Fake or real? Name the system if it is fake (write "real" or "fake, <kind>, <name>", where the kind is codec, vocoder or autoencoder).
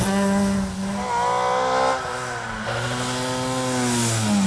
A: real